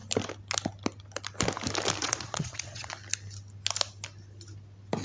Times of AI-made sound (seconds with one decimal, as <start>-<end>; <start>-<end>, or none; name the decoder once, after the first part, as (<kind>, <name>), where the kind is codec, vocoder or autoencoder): 2.0-2.9 (vocoder, Vocos)